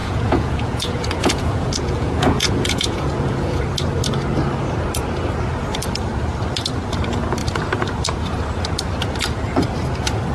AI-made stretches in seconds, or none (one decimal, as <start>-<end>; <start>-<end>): 0.0-3.6